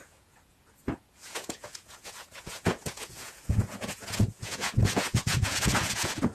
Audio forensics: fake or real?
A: fake